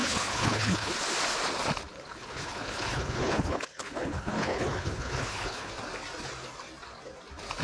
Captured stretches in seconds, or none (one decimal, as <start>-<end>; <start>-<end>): 0.9-1.9; 5.7-7.6